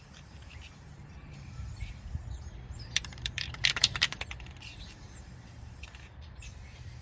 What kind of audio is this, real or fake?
fake